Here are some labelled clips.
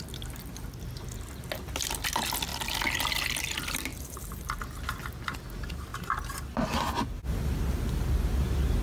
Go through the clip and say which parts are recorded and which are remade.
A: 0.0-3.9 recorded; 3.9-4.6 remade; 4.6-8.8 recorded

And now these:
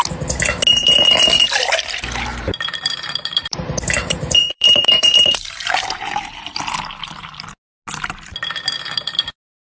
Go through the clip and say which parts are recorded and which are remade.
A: 0.0-2.3 recorded; 2.3-6.6 remade; 6.6-9.7 recorded

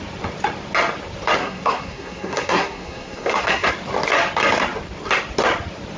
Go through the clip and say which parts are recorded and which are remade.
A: 0.0-1.4 recorded; 1.4-3.7 remade; 3.7-6.0 recorded

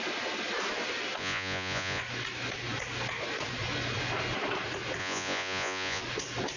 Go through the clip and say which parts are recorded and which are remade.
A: 0.0-1.2 recorded; 1.2-2.0 remade; 2.0-5.0 recorded; 5.0-6.0 remade; 6.0-6.6 recorded